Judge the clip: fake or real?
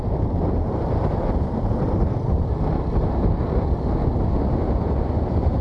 real